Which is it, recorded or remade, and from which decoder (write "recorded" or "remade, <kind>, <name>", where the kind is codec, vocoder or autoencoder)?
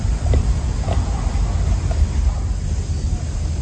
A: recorded